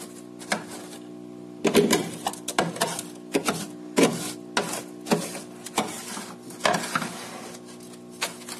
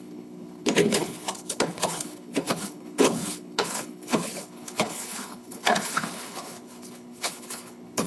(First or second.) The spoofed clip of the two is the second